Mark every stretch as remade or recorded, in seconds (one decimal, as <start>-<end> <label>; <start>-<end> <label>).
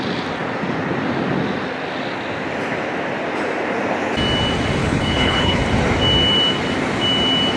0.0-4.8 recorded; 4.8-5.6 remade; 5.6-7.6 recorded